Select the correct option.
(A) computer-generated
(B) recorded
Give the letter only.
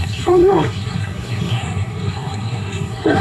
A